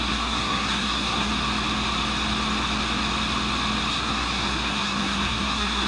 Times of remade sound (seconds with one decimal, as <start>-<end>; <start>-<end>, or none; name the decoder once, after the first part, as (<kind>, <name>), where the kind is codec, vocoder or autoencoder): 0.0-1.3 (codec, SNAC); 3.9-5.9